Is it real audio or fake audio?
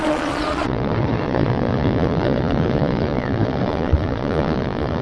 fake